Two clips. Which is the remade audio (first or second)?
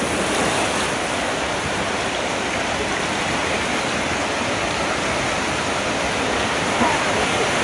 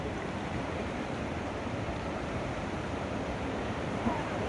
second